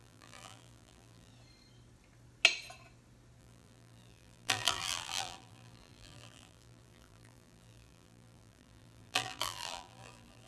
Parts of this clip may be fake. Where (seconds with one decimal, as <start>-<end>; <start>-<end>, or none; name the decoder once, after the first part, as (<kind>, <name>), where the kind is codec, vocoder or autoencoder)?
0.0-1.3 (vocoder, BigVGAN v2); 3.4-10.5